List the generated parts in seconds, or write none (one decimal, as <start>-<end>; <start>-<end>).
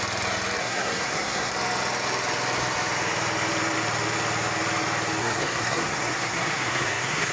0.6-1.5; 5.2-7.3